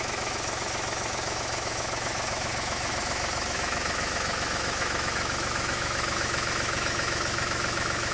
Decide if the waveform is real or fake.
fake